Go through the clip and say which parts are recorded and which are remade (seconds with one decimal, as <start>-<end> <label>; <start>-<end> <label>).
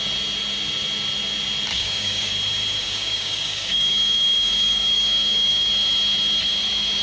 0.0-1.7 recorded; 1.7-2.3 remade; 2.3-2.8 recorded; 2.8-5.7 remade; 5.7-7.0 recorded